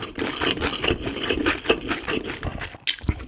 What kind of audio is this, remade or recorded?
recorded